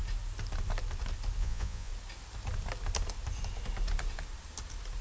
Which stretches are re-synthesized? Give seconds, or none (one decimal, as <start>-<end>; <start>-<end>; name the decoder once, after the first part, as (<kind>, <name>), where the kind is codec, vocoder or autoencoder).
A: 1.4-1.9 (vocoder, Vocos)